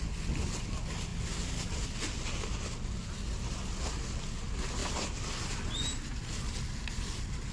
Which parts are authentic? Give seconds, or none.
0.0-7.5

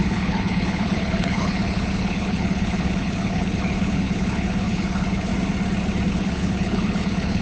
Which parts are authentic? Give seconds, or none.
5.3-6.1

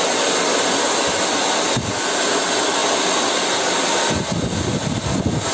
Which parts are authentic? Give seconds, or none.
0.0-5.5

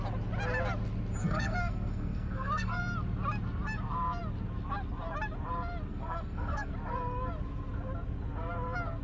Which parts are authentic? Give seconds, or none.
0.0-1.2; 2.8-5.9; 6.7-9.0

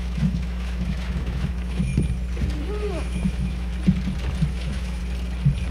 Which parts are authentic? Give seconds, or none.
1.9-2.9; 3.7-4.5; 5.0-5.7

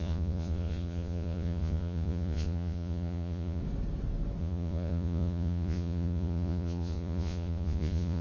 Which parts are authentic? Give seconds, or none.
3.6-4.4